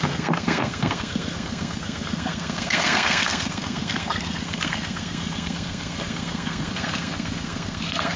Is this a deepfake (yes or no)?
yes